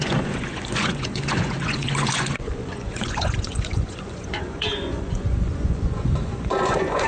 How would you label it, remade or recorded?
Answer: remade